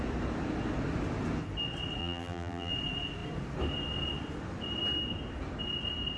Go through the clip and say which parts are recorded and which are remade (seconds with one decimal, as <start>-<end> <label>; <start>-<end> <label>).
0.0-2.0 recorded; 2.0-2.7 remade; 2.7-6.2 recorded